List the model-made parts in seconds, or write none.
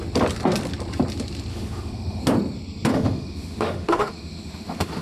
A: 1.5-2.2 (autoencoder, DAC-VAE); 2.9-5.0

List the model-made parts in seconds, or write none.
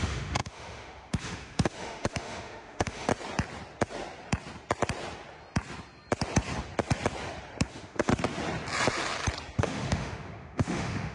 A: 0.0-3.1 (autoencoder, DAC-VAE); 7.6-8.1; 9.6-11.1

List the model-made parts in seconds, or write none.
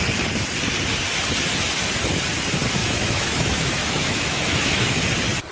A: 2.8-5.0 (autoencoder, DAC-VAE)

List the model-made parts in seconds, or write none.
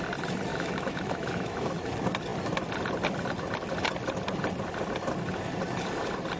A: 0.5-1.8 (autoencoder, DAC-VAE)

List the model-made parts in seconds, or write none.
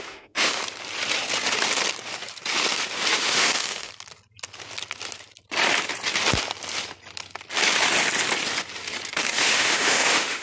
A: 0.0-0.6 (autoencoder, DAC-VAE); 3.1-3.9; 9.1-10.4